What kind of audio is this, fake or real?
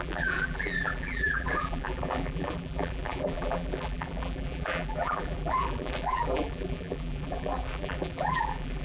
fake